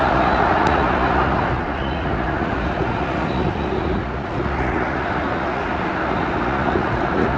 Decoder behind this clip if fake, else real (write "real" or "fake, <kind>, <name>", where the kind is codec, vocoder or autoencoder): fake, vocoder, Vocos